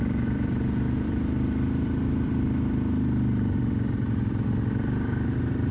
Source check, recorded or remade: remade